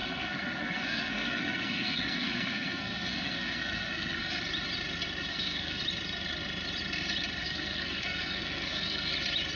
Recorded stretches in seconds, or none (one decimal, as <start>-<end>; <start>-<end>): 4.4-5.3; 5.8-7.4; 9.1-9.6